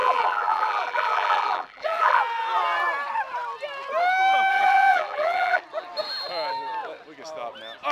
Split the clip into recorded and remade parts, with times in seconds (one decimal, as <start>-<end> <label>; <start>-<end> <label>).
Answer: 0.0-2.2 remade; 2.2-4.5 recorded; 4.5-5.6 remade; 5.6-7.9 recorded